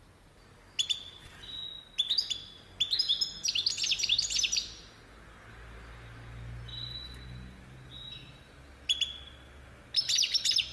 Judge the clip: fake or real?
real